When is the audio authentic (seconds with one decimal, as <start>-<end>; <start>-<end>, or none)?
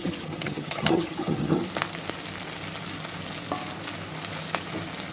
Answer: 1.6-5.1